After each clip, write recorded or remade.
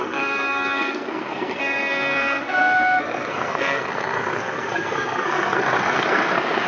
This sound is remade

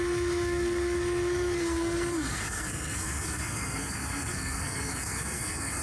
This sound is remade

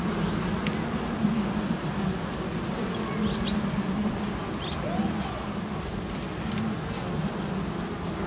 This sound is recorded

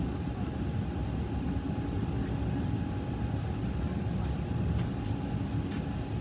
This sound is recorded